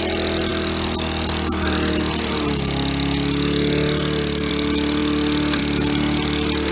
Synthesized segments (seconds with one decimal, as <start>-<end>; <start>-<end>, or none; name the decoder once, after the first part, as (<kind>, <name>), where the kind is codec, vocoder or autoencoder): none

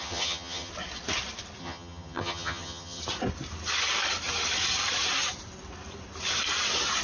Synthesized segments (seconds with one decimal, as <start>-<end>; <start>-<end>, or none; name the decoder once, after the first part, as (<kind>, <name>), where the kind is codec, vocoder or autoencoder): 0.0-0.7 (vocoder, HiFi-GAN); 1.6-3.0